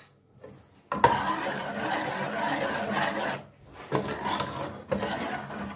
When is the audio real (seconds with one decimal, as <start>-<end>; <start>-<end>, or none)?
0.0-5.8